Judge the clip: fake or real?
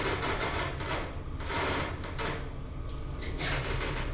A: fake